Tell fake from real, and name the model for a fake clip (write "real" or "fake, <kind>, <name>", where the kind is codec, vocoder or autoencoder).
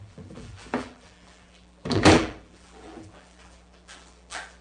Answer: fake, vocoder, BigVGAN v2